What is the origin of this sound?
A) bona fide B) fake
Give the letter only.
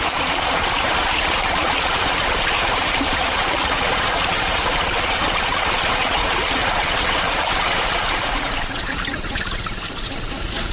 B